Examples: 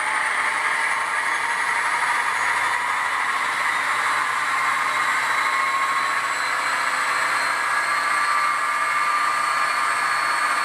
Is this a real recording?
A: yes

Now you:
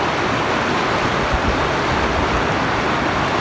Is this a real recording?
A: yes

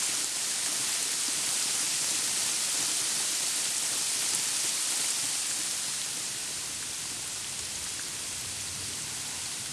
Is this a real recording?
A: yes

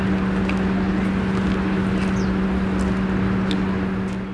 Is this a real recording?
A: yes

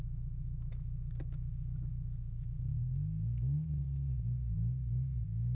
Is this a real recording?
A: no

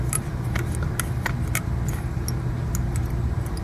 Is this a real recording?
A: yes